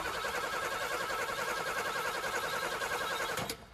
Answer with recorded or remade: recorded